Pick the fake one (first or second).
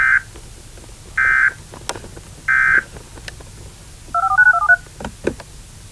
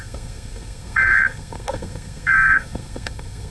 second